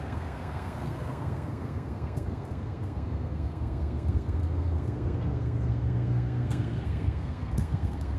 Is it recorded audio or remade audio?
remade